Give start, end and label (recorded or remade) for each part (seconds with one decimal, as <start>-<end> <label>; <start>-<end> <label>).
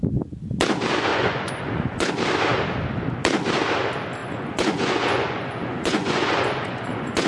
0.0-1.1 recorded; 1.1-2.1 remade; 2.1-4.2 recorded; 4.2-7.3 remade